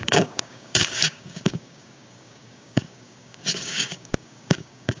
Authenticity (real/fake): fake